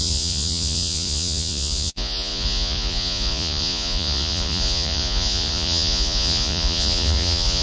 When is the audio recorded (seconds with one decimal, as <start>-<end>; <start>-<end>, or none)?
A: none

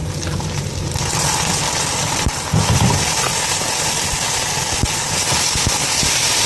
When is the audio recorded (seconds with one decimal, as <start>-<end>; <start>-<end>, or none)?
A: 0.0-6.5

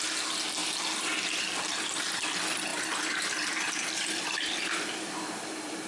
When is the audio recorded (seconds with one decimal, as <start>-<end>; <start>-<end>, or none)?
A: 0.0-2.7

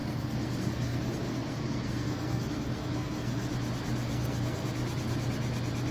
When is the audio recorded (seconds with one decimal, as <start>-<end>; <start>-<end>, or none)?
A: 3.5-4.0; 4.7-5.9